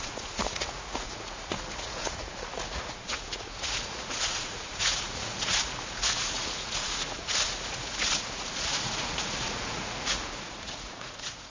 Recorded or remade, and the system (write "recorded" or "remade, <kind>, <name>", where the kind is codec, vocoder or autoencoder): remade, vocoder, Vocos